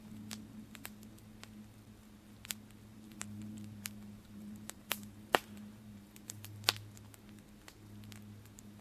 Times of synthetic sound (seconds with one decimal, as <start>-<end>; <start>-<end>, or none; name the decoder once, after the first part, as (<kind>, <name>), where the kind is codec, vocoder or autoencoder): 2.9-6.5 (vocoder, BigVGAN v2)